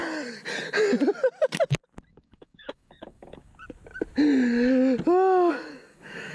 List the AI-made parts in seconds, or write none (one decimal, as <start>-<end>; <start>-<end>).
2.1-3.5; 5.5-6.3